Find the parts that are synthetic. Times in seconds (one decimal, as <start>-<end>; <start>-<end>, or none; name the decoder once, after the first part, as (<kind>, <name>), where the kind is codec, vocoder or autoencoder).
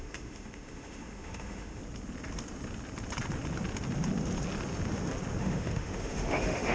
0.0-1.8 (autoencoder, DAC-VAE); 5.4-6.7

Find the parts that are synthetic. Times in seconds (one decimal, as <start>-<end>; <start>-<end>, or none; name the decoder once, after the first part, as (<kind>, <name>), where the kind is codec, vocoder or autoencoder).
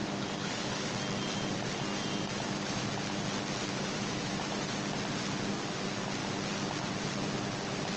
0.0-0.9 (autoencoder, DAC-VAE); 2.3-2.9; 3.7-4.8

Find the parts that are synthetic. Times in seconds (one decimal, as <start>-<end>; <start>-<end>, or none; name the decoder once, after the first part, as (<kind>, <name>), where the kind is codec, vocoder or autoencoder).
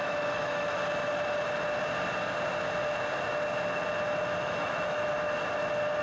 0.0-0.8 (autoencoder, DAC-VAE); 4.4-5.1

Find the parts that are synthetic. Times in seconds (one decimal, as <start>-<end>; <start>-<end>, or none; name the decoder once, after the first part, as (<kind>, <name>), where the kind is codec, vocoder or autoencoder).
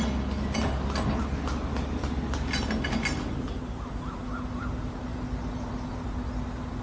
none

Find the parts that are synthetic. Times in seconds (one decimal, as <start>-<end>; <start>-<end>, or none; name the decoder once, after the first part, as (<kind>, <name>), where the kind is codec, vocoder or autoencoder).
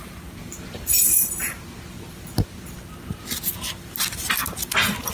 none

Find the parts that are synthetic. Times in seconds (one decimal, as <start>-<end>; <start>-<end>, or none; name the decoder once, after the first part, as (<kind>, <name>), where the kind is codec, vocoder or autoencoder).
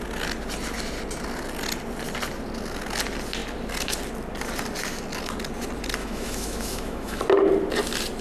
6.0-7.2 (autoencoder, DAC-VAE)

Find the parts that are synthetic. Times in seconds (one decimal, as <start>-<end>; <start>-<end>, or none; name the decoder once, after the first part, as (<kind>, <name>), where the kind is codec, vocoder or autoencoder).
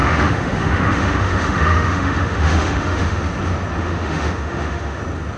0.0-3.2 (autoencoder, DAC-VAE); 3.8-5.0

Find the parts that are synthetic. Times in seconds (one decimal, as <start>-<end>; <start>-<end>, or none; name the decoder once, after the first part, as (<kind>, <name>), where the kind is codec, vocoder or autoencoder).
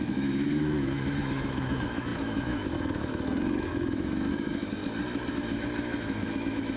0.0-4.8 (autoencoder, DAC-VAE); 5.3-6.8